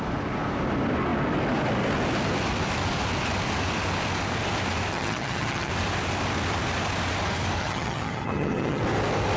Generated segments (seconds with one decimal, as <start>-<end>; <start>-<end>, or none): 4.9-5.7; 7.6-8.8